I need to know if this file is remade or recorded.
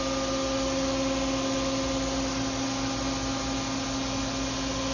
recorded